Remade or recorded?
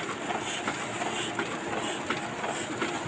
recorded